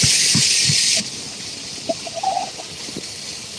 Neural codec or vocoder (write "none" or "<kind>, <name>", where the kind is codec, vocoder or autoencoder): none